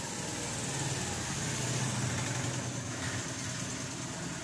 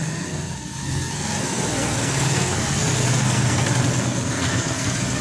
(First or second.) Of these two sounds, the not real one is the second